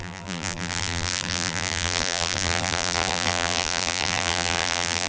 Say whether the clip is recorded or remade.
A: remade